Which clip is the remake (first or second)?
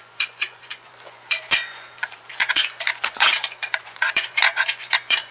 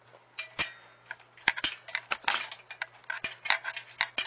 first